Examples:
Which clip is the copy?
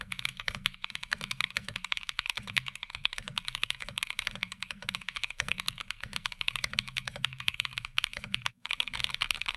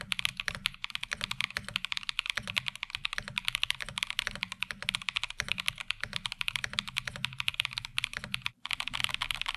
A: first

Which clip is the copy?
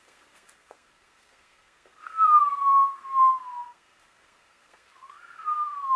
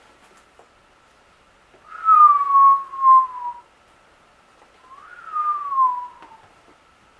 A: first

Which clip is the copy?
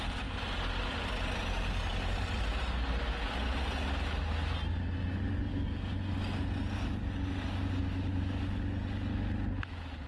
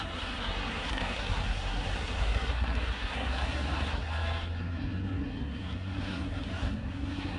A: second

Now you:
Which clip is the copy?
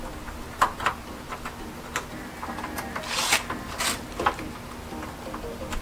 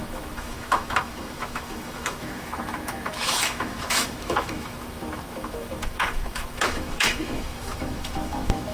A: second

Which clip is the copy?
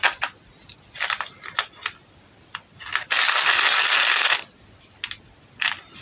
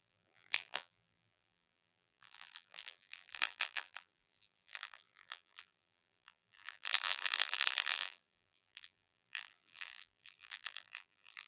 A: second